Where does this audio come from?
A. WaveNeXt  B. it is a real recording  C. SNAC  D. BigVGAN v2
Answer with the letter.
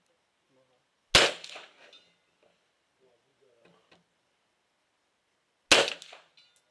B